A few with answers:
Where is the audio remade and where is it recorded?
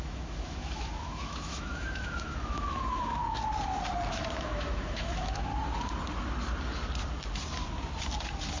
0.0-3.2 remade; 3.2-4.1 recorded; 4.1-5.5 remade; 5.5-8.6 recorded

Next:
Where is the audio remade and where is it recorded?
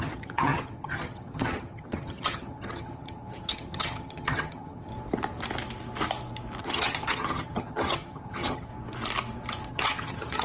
0.0-4.9 remade; 4.9-6.6 recorded; 6.6-8.7 remade; 8.7-9.7 recorded; 9.7-10.4 remade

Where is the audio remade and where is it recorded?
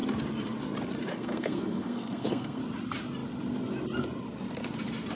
0.0-1.1 recorded; 1.1-2.6 remade; 2.6-5.2 recorded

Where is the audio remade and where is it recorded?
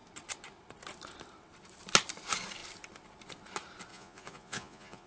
0.0-3.9 recorded; 3.9-5.1 remade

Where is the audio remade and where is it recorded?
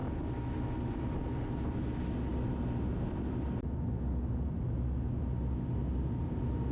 0.0-6.7 recorded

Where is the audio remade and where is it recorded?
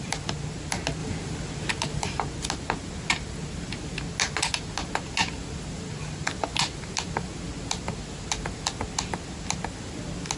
0.0-10.4 recorded